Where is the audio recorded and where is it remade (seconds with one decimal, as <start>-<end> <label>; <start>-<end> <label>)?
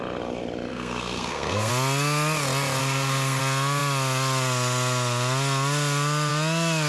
0.0-0.7 recorded; 0.7-1.7 remade; 1.7-2.8 recorded; 2.8-3.4 remade; 3.4-6.9 recorded